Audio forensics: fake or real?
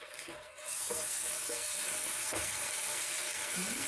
fake